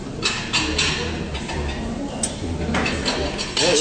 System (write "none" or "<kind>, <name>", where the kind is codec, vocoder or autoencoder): none